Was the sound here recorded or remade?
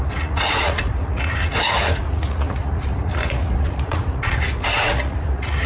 remade